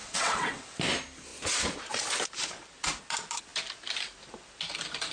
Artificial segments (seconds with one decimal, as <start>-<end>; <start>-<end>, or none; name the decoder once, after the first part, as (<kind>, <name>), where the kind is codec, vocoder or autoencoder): 0.0-0.8 (vocoder, WaveNeXt)